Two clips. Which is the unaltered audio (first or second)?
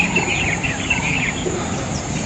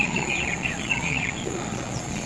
first